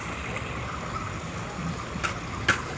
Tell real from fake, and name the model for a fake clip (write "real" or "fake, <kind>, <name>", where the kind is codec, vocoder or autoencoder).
real